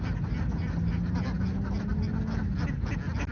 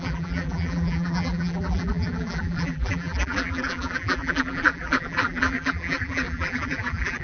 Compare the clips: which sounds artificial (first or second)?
second